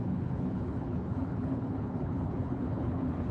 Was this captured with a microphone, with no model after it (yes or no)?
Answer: no